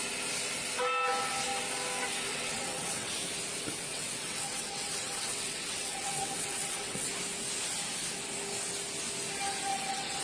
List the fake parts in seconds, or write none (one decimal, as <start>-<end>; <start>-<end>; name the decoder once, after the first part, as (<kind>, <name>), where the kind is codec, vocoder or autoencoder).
2.3-3.1 (vocoder, WaveNeXt); 3.9-7.1; 9.7-10.2